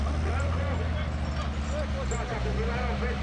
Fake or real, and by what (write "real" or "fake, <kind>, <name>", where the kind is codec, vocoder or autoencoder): real